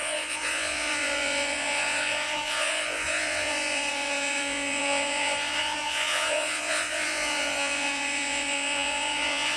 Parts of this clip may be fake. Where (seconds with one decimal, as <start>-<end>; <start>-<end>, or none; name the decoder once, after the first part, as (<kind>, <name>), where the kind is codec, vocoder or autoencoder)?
0.0-9.6 (vocoder, Vocos)